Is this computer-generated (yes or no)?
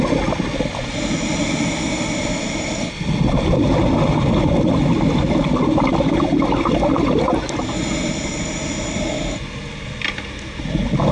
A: no